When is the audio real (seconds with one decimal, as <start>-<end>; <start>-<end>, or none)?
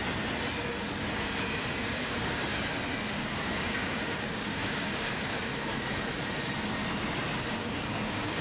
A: 0.0-1.6; 2.5-3.1; 5.7-7.5